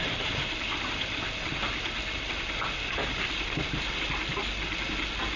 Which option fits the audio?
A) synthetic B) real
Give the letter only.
A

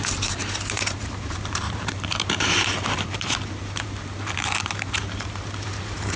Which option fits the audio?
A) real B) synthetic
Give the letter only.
B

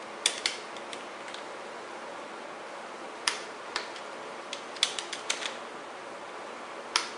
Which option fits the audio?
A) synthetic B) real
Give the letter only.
B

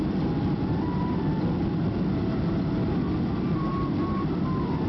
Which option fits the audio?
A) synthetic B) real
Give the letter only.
A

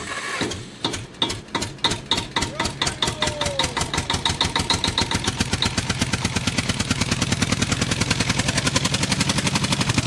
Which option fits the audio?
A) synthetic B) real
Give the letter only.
B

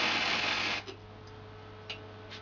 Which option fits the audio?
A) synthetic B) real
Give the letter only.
B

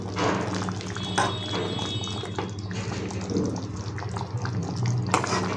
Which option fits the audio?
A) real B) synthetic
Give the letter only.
A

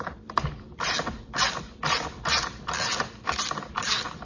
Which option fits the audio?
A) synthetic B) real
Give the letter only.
A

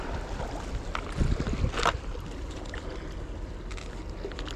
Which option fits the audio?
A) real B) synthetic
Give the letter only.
A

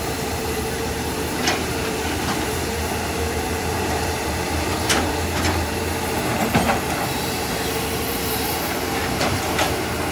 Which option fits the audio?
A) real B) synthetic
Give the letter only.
B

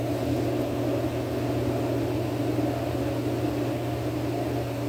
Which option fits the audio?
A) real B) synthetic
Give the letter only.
A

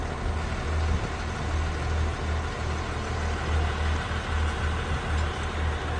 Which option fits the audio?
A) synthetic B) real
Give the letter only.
B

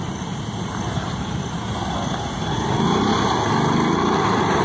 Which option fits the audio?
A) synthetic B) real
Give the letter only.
B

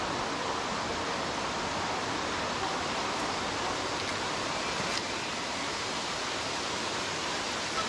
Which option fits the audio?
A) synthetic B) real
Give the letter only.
A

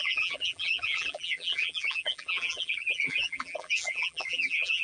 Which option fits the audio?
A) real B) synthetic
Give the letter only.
B